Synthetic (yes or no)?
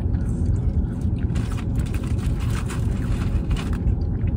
no